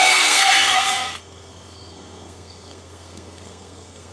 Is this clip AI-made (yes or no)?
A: yes